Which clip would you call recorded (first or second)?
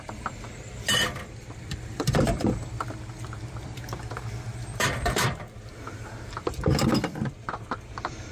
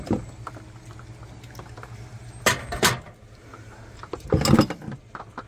second